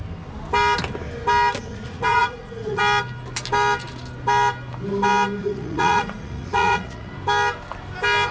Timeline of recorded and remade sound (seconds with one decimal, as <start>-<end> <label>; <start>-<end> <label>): 0.0-1.7 recorded; 1.7-2.8 remade; 2.8-5.4 recorded; 5.4-7.1 remade; 7.1-8.3 recorded